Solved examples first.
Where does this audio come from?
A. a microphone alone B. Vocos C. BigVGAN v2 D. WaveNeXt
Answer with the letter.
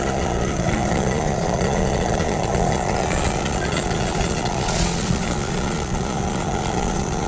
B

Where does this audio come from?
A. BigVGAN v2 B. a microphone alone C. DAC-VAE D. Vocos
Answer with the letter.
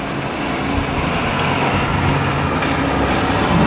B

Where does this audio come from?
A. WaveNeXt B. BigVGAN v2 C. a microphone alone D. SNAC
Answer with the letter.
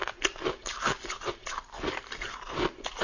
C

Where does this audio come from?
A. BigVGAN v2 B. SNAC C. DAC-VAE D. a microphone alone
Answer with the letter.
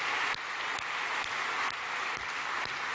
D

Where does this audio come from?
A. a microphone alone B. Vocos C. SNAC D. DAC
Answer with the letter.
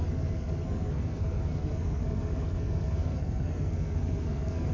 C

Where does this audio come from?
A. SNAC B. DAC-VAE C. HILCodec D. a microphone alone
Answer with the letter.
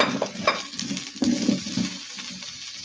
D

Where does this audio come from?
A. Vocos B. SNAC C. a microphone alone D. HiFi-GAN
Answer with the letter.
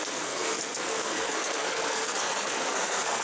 B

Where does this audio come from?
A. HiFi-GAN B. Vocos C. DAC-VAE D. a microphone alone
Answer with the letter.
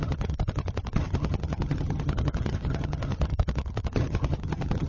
A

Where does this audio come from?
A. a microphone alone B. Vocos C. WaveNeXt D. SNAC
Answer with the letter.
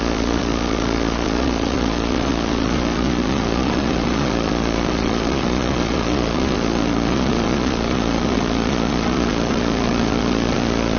B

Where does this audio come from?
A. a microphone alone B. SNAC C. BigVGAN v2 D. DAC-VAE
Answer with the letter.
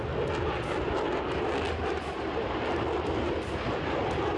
A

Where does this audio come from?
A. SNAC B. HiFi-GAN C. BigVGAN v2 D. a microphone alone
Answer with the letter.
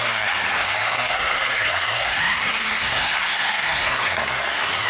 A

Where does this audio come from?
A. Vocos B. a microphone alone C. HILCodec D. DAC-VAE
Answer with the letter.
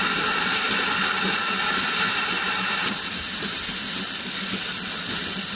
B